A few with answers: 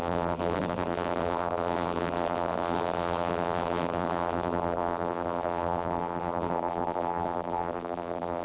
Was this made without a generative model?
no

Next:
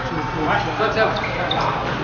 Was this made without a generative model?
yes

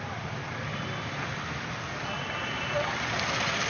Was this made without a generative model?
yes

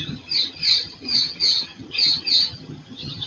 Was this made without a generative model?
no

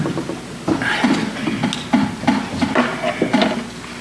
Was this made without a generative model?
yes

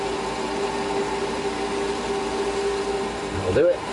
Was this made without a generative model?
yes